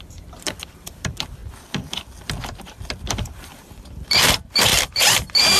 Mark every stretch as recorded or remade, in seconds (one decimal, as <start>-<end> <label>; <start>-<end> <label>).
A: 0.0-1.4 remade; 1.4-2.2 recorded; 2.2-5.6 remade